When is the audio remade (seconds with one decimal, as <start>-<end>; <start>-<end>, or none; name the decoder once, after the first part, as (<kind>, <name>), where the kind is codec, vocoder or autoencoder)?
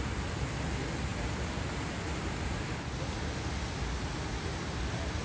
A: none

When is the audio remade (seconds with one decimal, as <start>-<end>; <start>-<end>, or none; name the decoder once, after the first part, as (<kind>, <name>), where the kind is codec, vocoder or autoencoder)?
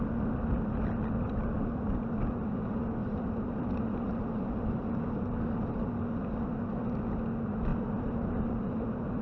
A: 3.0-5.0 (vocoder, BigVGAN v2); 7.7-9.2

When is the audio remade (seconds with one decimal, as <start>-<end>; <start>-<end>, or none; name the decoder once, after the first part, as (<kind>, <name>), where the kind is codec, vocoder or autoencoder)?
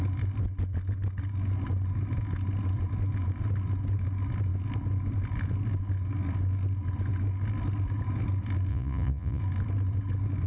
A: 8.7-9.4 (vocoder, Vocos)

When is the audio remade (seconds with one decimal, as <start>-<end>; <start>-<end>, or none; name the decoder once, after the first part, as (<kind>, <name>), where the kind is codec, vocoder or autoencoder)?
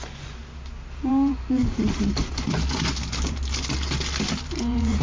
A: 0.0-0.4 (vocoder, Vocos); 1.1-1.6; 4.6-5.0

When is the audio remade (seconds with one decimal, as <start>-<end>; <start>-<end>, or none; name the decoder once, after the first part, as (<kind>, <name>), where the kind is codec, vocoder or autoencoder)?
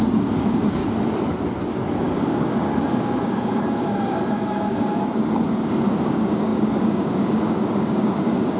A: 0.0-0.8 (codec, DAC); 1.7-8.6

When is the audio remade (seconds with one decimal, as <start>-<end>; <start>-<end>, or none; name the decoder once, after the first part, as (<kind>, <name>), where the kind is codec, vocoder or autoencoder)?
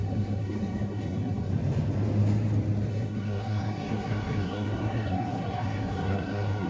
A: 0.0-1.5 (codec, SNAC); 2.9-6.7